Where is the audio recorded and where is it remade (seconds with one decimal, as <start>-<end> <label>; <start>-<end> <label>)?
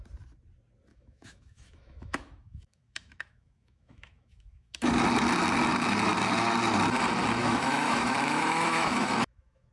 0.0-0.9 recorded; 0.9-4.9 remade; 4.9-7.4 recorded; 7.4-9.7 remade